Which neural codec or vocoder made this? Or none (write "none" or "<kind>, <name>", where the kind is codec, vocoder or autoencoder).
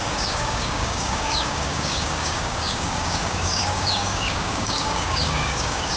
codec, DAC